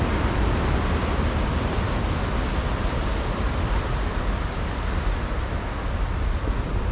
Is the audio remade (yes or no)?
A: no